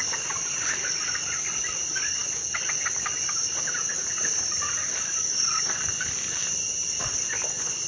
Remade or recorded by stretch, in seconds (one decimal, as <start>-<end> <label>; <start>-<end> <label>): 0.0-6.4 recorded; 6.4-7.3 remade; 7.3-7.9 recorded